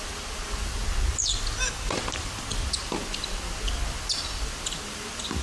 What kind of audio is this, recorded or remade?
recorded